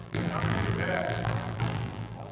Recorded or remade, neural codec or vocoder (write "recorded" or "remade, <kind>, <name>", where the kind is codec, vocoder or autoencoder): remade, vocoder, BigVGAN v2